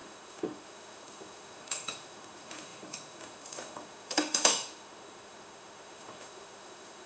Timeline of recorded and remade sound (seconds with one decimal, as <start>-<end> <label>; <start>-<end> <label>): 0.0-7.1 remade